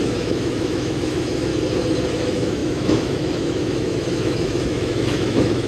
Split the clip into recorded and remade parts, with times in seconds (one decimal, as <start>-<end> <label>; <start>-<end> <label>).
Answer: 0.0-1.5 remade; 1.5-2.1 recorded; 2.1-5.7 remade